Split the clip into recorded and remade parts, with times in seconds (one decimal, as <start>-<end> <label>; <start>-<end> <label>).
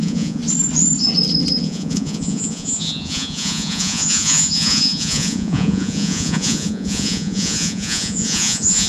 0.0-0.4 remade; 0.4-1.6 recorded; 1.6-8.9 remade